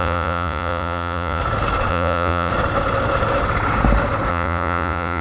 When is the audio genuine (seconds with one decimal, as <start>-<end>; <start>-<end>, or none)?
1.4-1.9; 2.5-4.3